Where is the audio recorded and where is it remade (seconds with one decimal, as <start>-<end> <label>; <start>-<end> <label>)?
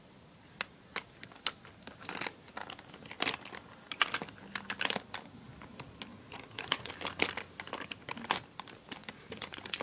0.0-6.1 recorded; 6.1-6.9 remade; 6.9-9.0 recorded; 9.0-9.8 remade